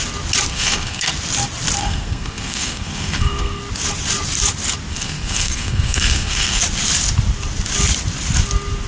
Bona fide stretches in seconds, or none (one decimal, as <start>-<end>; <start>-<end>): 0.0-0.5; 1.1-1.8; 3.6-4.9; 6.6-8.9